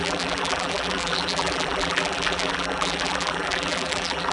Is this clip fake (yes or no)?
yes